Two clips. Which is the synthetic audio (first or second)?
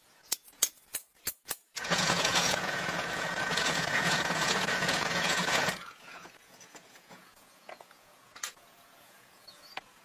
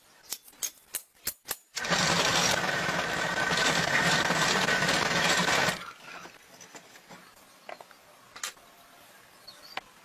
first